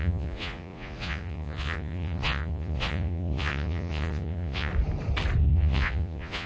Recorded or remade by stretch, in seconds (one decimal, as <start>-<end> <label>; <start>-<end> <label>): 0.0-4.7 remade; 4.7-5.4 recorded; 5.4-6.5 remade